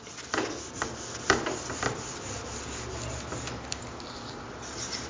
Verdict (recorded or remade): recorded